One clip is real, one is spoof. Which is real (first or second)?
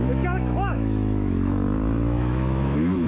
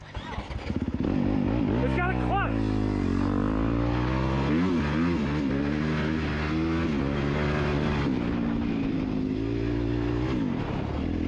second